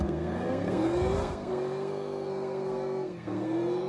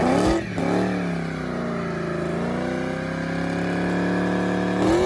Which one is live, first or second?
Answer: second